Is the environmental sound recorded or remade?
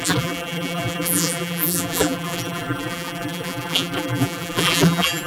remade